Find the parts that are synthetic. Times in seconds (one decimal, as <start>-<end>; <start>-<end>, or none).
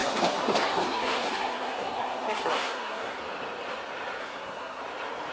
0.0-3.2; 4.2-4.8